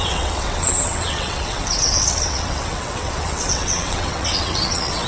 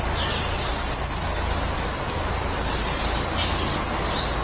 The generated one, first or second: first